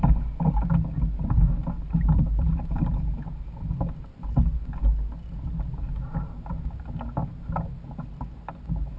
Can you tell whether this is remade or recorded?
recorded